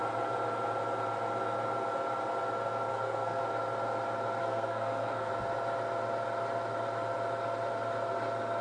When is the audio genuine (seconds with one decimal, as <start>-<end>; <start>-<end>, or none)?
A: 0.0-2.9; 3.4-4.4; 5.3-8.6